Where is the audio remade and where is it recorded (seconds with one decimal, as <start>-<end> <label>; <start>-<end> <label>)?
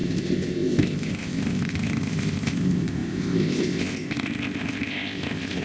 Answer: 0.0-5.6 remade